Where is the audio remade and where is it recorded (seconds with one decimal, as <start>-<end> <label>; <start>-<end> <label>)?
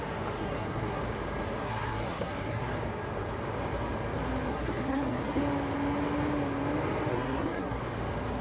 0.0-0.4 recorded; 0.4-1.0 remade; 1.0-1.6 recorded; 1.6-2.7 remade; 2.7-4.5 recorded; 4.5-5.4 remade; 5.4-7.1 recorded; 7.1-7.8 remade; 7.8-8.4 recorded